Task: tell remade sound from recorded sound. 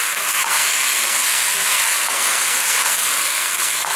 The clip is remade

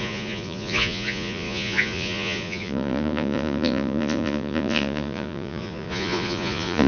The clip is remade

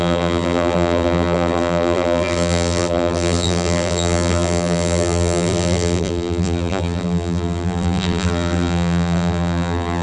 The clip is remade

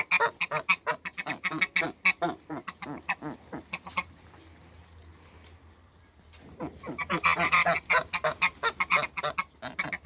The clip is recorded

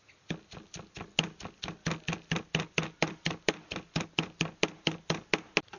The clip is recorded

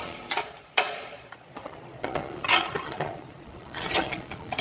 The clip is remade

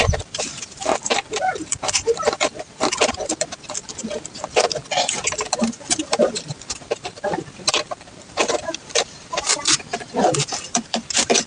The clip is remade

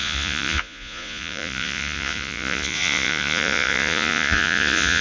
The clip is remade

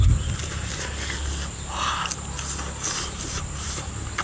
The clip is recorded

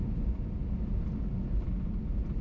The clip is recorded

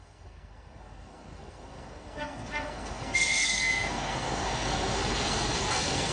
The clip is remade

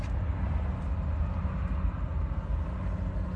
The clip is recorded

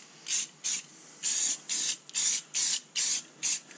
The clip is recorded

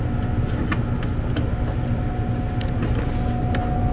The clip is recorded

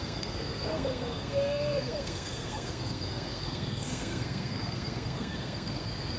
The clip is remade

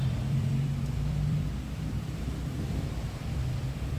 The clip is remade